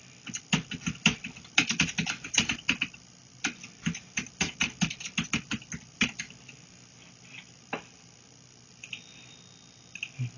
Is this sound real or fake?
real